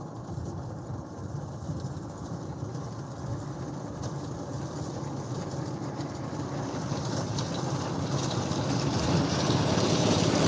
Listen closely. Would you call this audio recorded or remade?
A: recorded